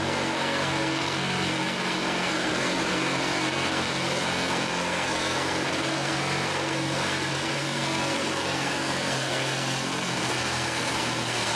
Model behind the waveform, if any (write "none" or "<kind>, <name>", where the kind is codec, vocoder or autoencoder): codec, SNAC